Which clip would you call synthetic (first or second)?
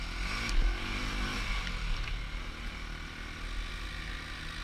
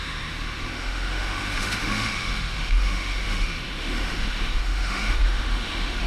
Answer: second